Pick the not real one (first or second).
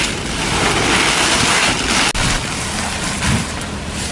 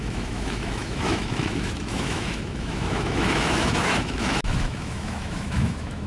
second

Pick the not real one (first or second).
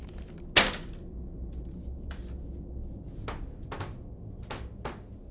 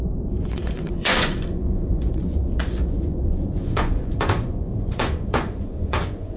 second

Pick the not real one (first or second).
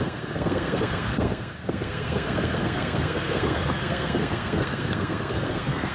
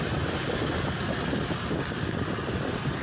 first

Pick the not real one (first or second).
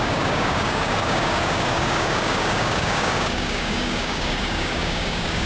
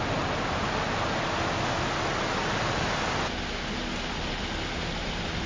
first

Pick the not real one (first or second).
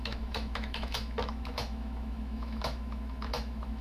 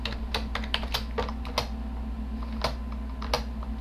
first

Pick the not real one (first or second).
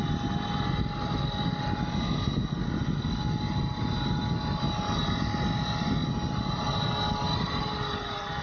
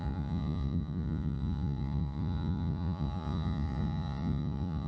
second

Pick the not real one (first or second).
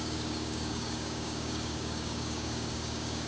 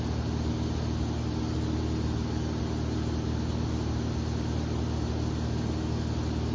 first